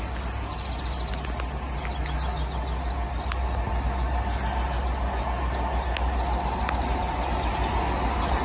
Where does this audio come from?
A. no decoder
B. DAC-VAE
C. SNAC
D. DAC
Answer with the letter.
A